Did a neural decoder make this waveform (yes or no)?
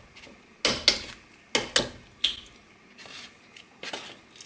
no